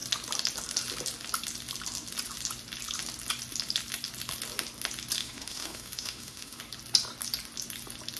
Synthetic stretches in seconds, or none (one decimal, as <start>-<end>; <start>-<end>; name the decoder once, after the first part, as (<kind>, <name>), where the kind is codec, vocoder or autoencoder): 5.2-6.6 (autoencoder, DAC-VAE)